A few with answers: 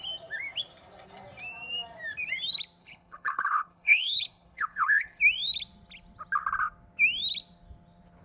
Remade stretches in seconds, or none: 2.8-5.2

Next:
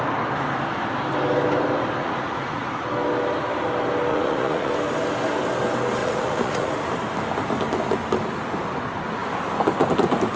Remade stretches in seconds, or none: 2.0-2.7; 4.1-4.7; 6.0-6.9

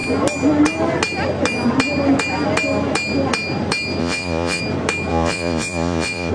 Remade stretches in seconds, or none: 4.0-4.6; 5.1-6.3

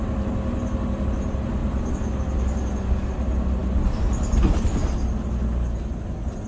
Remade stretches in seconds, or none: none